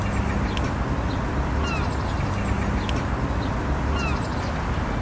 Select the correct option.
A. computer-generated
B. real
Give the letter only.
B